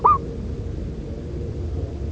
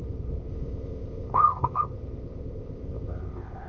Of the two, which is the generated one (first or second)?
second